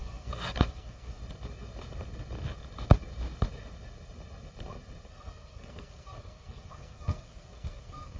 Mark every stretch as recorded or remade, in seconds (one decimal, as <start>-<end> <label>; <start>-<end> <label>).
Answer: 0.0-1.2 remade; 1.2-5.1 recorded; 5.1-8.2 remade